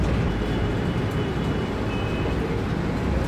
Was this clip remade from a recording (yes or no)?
no